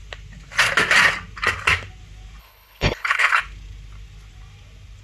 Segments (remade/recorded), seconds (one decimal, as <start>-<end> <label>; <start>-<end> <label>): 0.0-2.4 recorded; 2.4-3.4 remade; 3.4-5.0 recorded

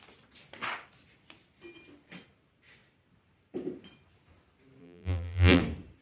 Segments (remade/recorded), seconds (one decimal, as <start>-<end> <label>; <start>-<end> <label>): 0.0-4.8 recorded; 4.8-5.6 remade; 5.6-6.0 recorded